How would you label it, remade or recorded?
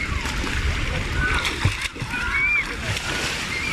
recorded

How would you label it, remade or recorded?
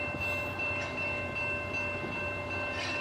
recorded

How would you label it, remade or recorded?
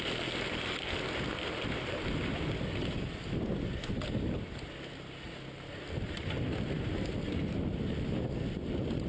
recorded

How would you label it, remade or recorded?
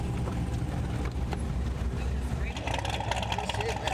recorded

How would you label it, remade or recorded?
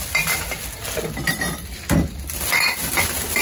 recorded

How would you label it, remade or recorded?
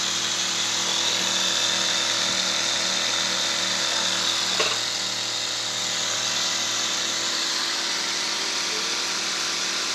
recorded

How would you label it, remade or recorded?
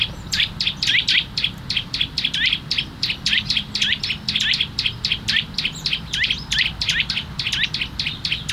recorded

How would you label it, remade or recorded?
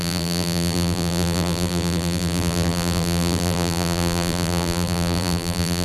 remade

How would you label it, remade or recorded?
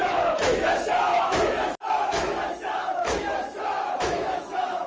remade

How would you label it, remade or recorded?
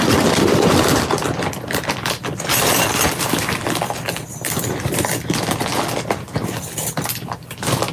remade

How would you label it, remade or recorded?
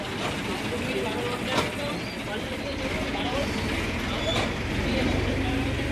recorded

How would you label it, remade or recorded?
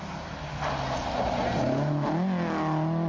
recorded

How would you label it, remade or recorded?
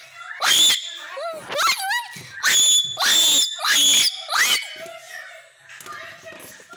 recorded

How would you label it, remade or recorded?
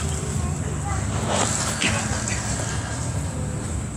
recorded